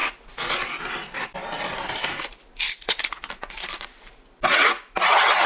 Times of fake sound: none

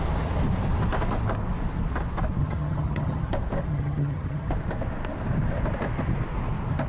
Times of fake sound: 2.4-3.3 (vocoder, HiFi-GAN); 3.7-4.5

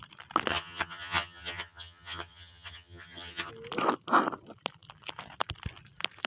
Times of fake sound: 0.5-3.5 (vocoder, HiFi-GAN)